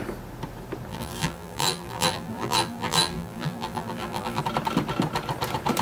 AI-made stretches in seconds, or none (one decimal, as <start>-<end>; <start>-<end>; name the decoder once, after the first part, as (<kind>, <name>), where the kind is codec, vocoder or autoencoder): 0.9-4.4 (vocoder, BigVGAN v2)